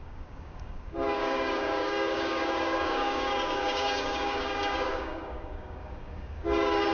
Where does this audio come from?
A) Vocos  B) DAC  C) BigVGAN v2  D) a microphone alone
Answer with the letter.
B